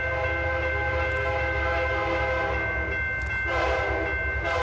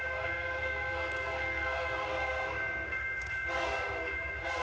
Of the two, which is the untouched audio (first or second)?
first